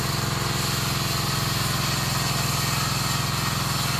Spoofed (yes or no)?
no